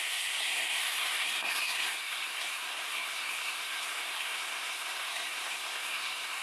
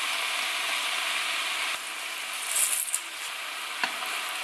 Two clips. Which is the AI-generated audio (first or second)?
first